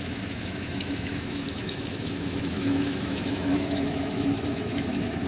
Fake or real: fake